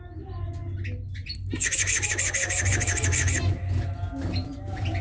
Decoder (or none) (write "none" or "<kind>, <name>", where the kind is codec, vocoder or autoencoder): none